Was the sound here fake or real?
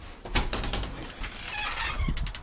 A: real